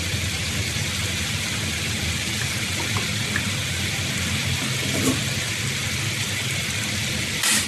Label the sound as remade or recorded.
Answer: recorded